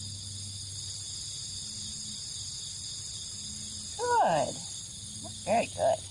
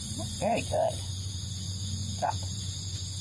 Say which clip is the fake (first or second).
second